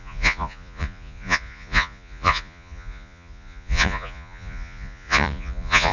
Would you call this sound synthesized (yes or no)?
yes